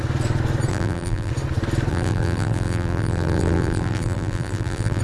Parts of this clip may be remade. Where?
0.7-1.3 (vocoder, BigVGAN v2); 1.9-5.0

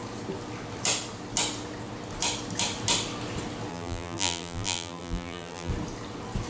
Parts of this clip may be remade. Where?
3.7-5.7 (vocoder, BigVGAN v2)

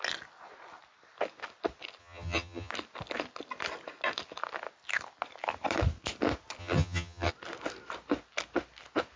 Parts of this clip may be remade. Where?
2.0-2.7 (vocoder, HiFi-GAN); 6.6-7.3

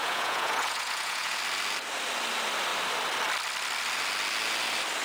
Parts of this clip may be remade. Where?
0.0-1.4 (vocoder, Vocos)